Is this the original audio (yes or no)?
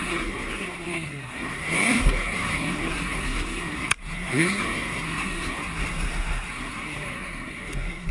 no